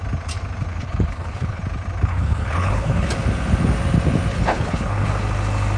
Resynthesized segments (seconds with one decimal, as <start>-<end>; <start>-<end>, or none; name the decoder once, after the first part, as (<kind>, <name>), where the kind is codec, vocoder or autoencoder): 0.7-1.6 (codec, HILCodec); 2.1-3.1; 4.3-5.1